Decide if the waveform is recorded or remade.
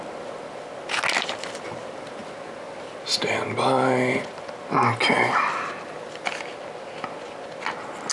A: recorded